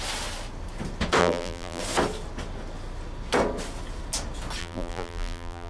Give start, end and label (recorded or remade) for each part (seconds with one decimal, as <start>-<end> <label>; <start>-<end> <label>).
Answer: 0.0-1.2 recorded; 1.2-1.8 remade; 1.8-4.6 recorded; 4.6-5.7 remade